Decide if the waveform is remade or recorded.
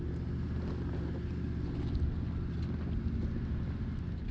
recorded